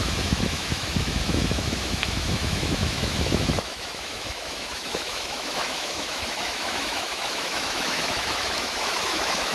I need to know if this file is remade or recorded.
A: remade